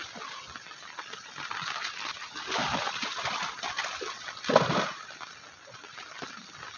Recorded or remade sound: recorded